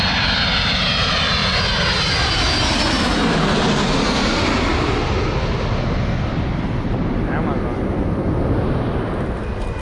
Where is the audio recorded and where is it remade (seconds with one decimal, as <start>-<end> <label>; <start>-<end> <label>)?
0.0-9.8 recorded

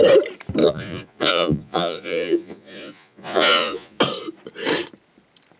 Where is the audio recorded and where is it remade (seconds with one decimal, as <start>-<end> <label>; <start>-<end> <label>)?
0.0-0.6 recorded; 0.6-4.0 remade; 4.0-5.6 recorded

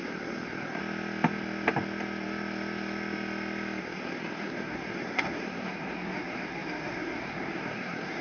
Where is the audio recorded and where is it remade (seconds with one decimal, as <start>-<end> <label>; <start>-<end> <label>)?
0.0-0.8 remade; 0.8-3.8 recorded; 3.8-8.2 remade

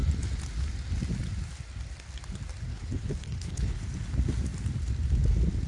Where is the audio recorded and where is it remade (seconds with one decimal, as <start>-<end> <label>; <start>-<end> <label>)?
0.0-2.7 recorded; 2.7-3.8 remade; 3.8-5.7 recorded

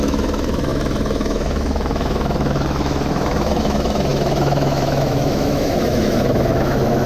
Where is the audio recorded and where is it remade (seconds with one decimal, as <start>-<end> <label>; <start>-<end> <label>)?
0.0-7.1 remade

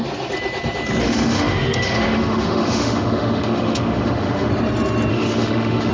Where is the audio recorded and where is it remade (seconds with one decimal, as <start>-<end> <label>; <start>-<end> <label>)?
0.0-1.0 recorded; 1.0-4.5 remade; 4.5-5.1 recorded; 5.1-5.9 remade